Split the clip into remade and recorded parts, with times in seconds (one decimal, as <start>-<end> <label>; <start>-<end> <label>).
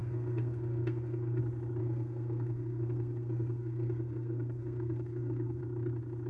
0.0-1.4 remade; 1.4-1.8 recorded; 1.8-5.6 remade; 5.6-6.3 recorded